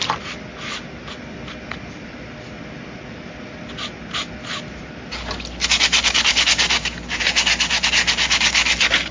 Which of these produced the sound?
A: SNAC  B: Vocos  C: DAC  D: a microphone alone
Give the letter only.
D